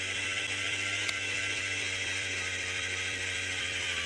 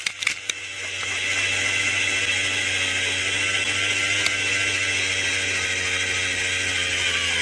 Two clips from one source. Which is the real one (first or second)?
second